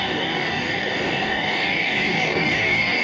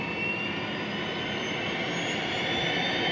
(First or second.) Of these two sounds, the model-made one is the first